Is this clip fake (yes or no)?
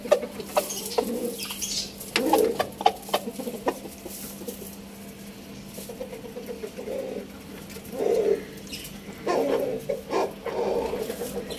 no